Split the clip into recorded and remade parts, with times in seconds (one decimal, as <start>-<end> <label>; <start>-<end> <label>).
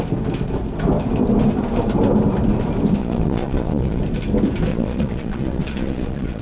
0.0-3.0 recorded; 3.0-4.0 remade; 4.0-4.7 recorded; 4.7-6.4 remade